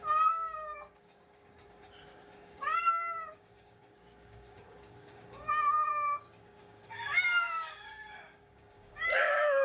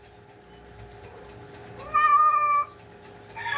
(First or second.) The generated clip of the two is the first